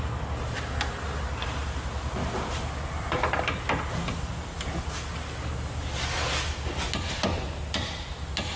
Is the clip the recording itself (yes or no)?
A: yes